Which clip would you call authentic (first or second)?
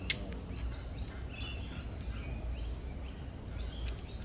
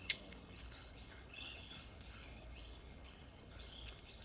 first